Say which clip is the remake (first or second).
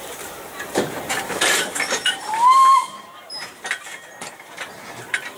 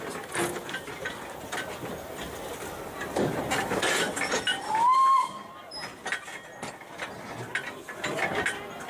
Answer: first